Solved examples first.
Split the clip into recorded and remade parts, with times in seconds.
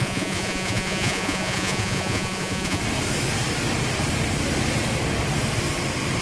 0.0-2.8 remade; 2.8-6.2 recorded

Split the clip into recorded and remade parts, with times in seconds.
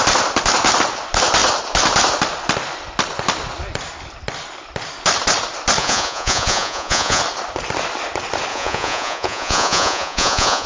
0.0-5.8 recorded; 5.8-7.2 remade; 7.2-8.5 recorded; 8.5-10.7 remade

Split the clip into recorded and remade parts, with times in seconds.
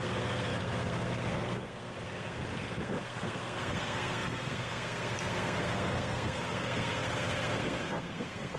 0.0-8.6 remade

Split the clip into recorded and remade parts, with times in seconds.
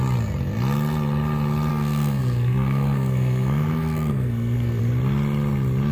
0.0-1.7 recorded; 1.7-4.8 remade; 4.8-5.9 recorded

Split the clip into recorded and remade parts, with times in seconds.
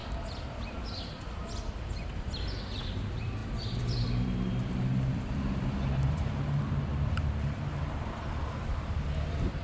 0.0-9.6 remade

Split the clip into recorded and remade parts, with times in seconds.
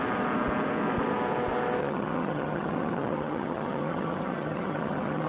0.0-1.8 recorded; 1.8-5.3 remade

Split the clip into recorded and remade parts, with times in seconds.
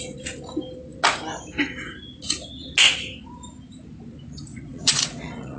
0.0-4.5 recorded; 4.5-5.6 remade